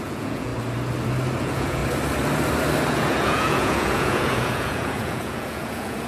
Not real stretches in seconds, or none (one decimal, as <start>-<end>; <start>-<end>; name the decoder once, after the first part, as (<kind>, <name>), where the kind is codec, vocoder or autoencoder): 0.0-0.5 (vocoder, Vocos); 1.4-1.8; 2.9-6.1

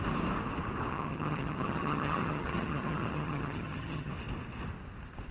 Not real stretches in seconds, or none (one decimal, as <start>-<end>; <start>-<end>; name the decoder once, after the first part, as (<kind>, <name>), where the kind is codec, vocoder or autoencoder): 0.9-4.1 (vocoder, HiFi-GAN)

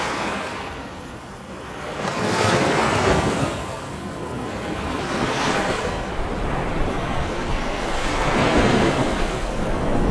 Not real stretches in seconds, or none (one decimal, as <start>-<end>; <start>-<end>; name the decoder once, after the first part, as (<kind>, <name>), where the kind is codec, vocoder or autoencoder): 0.0-6.1 (codec, SNAC); 6.9-10.1

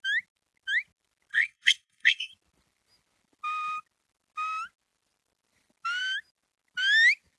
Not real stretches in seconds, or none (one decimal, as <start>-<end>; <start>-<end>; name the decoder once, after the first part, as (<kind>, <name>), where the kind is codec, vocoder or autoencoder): 1.3-2.3 (codec, SNAC)

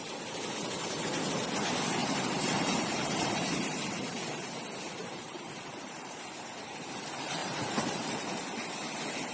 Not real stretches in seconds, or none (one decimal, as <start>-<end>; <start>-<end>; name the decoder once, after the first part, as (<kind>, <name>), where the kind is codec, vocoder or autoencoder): 2.0-4.0 (vocoder, BigVGAN v2); 5.0-6.8; 7.4-8.3

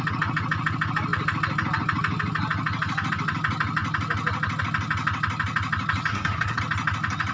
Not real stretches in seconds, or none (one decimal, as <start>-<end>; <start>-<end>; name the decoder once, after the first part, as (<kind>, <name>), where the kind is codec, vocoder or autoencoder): 6.1-6.6 (codec, SNAC)

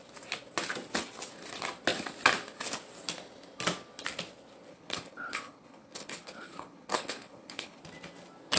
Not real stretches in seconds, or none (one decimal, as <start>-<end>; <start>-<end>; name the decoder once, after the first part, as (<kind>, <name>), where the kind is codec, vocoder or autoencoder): 4.7-7.8 (codec, HILCodec)

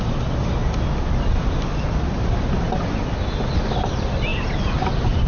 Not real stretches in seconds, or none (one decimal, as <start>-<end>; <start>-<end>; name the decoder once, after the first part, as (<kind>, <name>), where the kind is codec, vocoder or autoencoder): 0.6-2.5 (vocoder, BigVGAN v2); 4.3-5.3